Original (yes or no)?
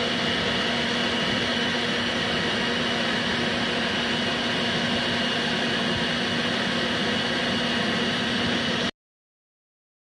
yes